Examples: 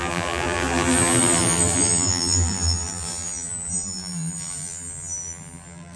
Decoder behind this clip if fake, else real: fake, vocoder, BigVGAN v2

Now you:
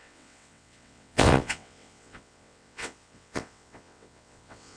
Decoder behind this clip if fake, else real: fake, vocoder, WaveNeXt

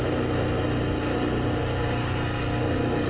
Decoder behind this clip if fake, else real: real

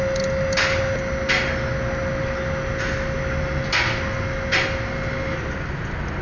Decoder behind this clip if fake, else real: real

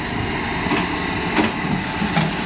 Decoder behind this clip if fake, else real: real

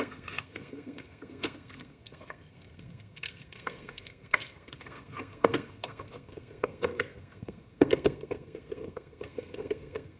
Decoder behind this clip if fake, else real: fake, codec, SNAC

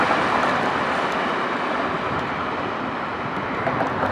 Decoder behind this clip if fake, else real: real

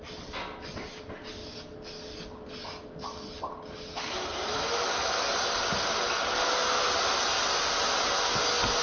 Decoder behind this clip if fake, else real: real